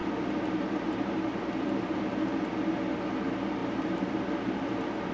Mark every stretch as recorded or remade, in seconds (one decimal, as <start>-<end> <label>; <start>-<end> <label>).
0.0-1.1 remade; 1.1-3.6 recorded; 3.6-5.1 remade